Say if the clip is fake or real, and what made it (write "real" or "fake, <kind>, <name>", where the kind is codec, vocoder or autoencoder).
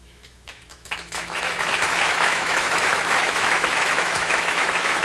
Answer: fake, autoencoder, DAC-VAE